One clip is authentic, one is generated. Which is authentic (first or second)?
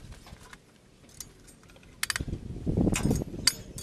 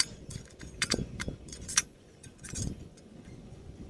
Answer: first